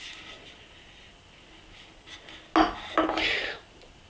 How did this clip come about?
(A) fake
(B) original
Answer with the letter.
B